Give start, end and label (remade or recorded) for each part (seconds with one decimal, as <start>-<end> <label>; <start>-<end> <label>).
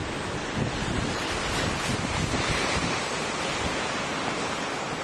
0.0-5.0 recorded